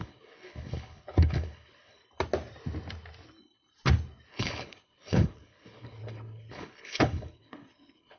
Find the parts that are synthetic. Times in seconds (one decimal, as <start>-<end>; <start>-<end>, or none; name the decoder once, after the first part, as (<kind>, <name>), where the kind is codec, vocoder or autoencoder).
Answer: 0.0-2.0 (codec, HILCodec); 4.3-8.2